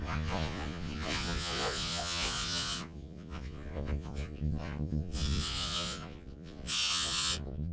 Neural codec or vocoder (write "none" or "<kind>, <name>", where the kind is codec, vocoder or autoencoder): vocoder, Vocos